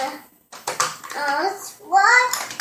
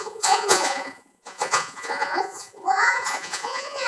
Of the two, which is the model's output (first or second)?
second